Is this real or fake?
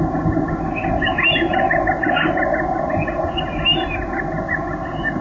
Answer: real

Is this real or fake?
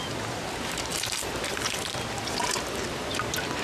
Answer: real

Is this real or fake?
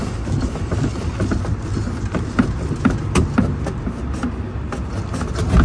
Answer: real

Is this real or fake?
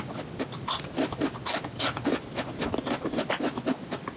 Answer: real